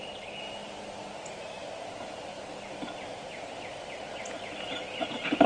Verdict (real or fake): real